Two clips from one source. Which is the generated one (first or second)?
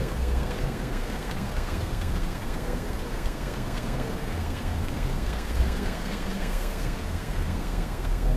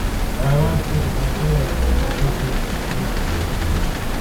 first